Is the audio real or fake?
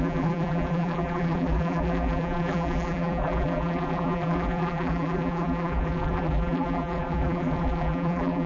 fake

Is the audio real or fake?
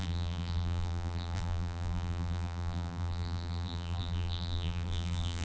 fake